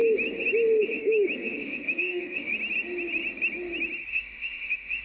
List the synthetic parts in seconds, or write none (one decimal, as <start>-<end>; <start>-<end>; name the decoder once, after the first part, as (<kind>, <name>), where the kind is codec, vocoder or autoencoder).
0.8-2.5 (autoencoder, DAC-VAE); 4.1-5.0